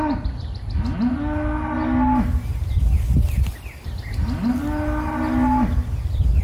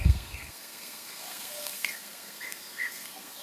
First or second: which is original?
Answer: first